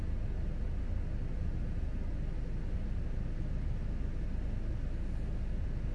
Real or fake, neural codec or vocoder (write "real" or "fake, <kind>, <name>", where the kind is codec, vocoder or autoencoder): real